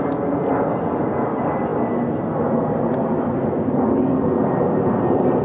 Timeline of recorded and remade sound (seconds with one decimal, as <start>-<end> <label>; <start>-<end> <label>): 0.0-5.4 recorded